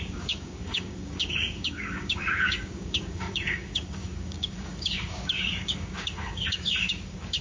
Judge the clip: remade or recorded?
remade